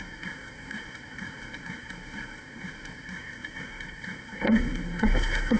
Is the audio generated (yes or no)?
yes